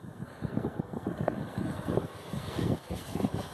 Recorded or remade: remade